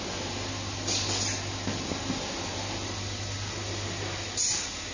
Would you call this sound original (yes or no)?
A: yes